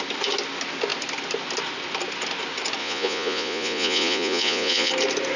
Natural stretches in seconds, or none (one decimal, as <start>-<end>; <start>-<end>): 0.0-2.8; 4.9-5.4